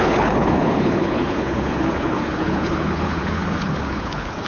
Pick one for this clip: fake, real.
fake